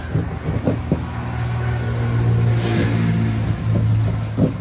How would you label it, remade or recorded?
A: recorded